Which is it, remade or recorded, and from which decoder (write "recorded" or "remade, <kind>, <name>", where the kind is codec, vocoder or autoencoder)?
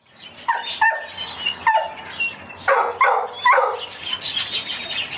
recorded